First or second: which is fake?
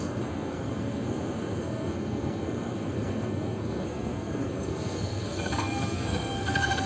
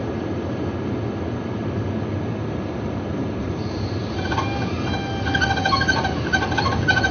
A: first